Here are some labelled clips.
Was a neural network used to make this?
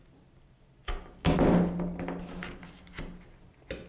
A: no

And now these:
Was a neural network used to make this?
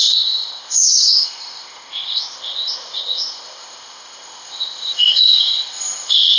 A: yes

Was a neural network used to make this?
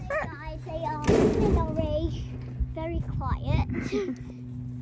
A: no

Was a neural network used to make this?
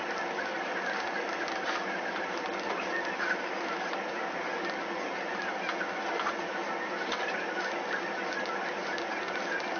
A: no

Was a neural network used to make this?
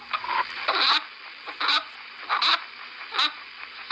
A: no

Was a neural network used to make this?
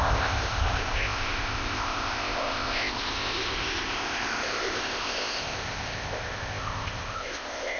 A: yes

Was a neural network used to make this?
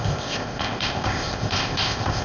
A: yes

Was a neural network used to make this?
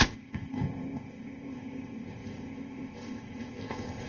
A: yes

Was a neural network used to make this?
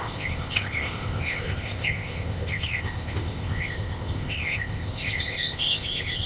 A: yes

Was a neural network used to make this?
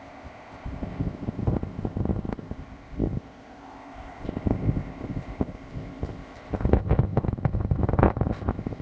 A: yes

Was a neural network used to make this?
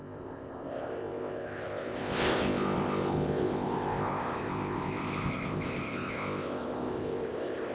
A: yes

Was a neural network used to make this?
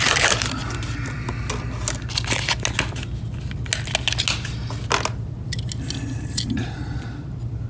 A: no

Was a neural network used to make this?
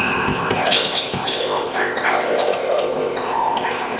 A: yes